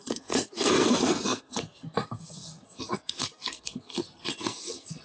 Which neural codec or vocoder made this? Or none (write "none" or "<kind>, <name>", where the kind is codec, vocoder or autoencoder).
codec, SNAC